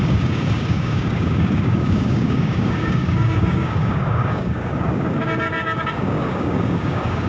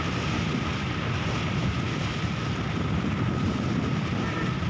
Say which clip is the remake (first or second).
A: first